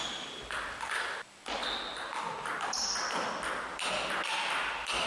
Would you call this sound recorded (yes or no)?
yes